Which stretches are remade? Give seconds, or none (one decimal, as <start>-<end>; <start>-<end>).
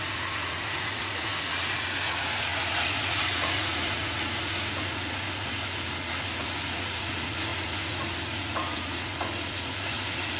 0.0-10.4